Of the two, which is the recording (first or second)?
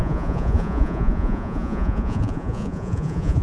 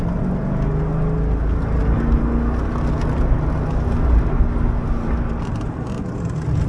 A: second